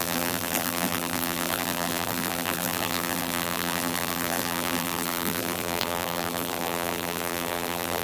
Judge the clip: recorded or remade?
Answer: remade